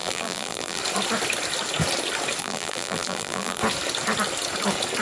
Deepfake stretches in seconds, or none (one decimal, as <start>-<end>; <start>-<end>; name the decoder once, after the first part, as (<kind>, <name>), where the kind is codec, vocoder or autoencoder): 0.0-0.8 (vocoder, BigVGAN v2); 2.4-3.6